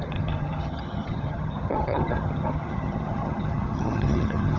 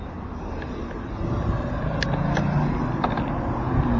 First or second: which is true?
second